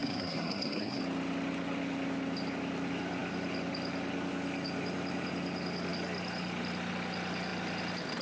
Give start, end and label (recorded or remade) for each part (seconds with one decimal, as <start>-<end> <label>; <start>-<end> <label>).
0.0-1.0 remade; 1.0-8.2 recorded